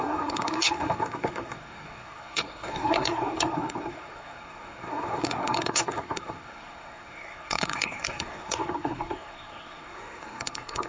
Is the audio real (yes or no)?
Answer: no